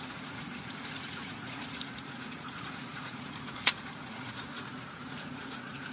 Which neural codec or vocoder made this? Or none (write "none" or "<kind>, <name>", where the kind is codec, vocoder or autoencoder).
vocoder, Vocos